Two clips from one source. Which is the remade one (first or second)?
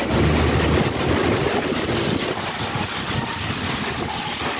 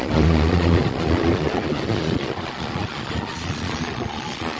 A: second